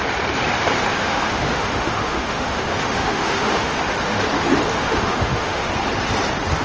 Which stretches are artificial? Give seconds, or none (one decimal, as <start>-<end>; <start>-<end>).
1.0-4.2; 4.7-5.7